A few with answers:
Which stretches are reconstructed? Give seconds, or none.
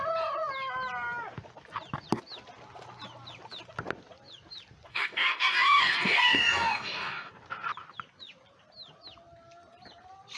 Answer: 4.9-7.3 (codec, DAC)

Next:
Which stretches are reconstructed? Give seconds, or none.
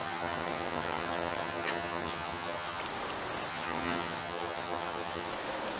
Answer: 0.0-2.8 (vocoder, HiFi-GAN); 3.5-5.3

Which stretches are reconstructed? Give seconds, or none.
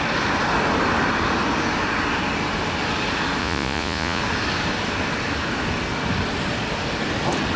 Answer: 3.4-4.2 (vocoder, Vocos)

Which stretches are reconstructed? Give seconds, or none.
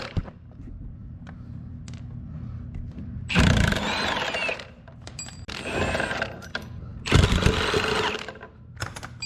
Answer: none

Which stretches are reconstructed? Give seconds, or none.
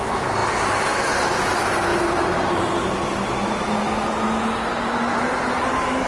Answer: none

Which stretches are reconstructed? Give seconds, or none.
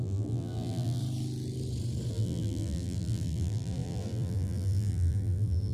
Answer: 0.0-1.0 (vocoder, BigVGAN v2); 2.1-5.7